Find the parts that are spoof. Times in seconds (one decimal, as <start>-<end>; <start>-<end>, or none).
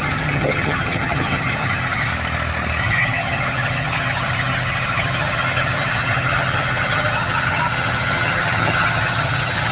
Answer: 0.0-2.1; 2.8-9.7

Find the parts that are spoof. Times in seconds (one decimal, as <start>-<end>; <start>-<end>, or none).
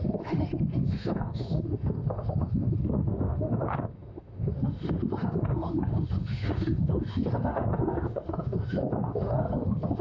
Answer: 0.0-10.0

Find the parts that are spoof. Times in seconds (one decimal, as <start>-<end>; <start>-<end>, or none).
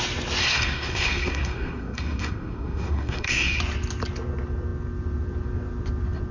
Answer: 0.4-3.6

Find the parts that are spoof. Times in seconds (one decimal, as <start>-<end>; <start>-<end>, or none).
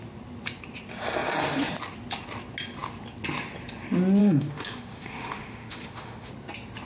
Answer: 4.2-6.3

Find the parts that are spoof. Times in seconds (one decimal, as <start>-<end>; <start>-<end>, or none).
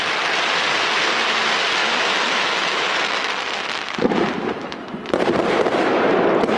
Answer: 1.8-3.3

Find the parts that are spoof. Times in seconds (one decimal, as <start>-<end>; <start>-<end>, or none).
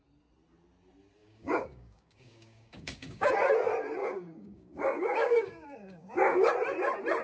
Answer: 1.2-3.3; 4.0-6.5